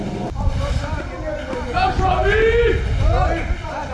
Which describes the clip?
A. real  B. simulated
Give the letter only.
A